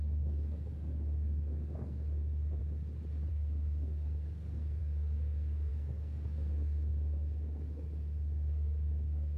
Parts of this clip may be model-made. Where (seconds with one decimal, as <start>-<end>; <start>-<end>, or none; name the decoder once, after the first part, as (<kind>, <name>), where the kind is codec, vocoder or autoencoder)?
0.0-2.6 (codec, SNAC); 3.3-9.4